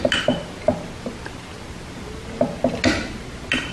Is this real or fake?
real